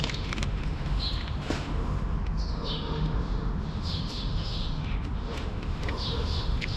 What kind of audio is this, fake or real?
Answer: fake